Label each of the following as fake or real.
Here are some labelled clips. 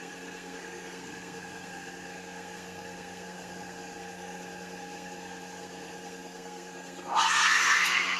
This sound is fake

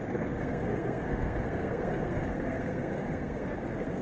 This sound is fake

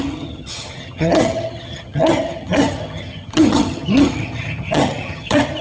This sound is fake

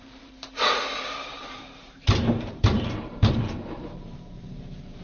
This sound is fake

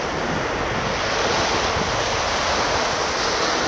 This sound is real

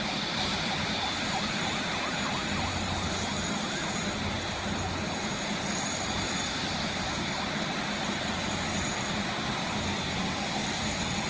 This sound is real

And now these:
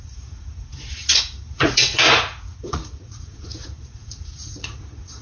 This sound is fake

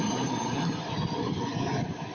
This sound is real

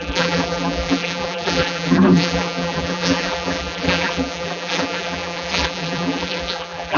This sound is fake